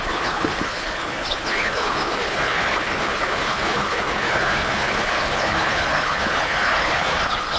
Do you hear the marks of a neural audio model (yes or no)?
yes